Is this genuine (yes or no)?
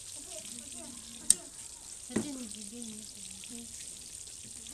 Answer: yes